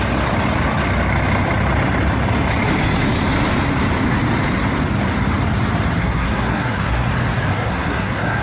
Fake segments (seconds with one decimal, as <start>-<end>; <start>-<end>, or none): 6.0-7.1; 7.5-8.4